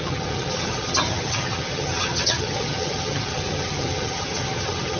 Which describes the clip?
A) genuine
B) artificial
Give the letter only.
B